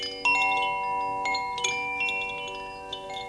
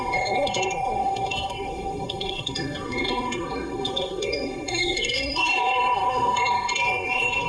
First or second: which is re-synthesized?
second